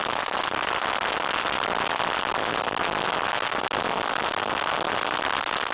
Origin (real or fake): real